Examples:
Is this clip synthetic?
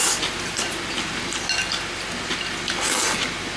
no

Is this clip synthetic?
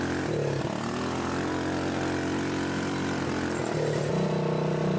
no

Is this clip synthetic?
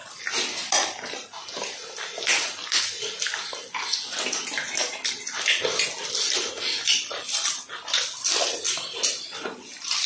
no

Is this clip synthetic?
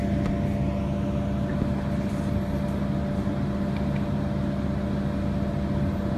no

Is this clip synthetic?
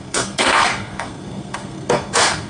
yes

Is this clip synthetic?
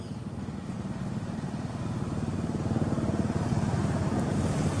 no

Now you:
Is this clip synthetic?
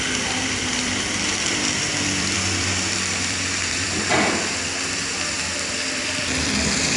yes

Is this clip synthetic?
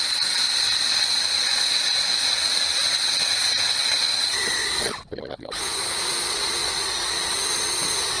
yes